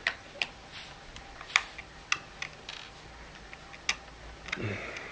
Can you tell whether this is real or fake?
real